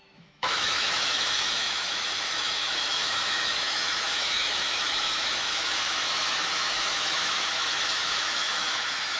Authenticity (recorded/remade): remade